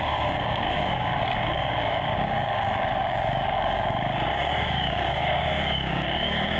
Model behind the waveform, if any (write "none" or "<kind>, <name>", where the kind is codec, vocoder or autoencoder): codec, DAC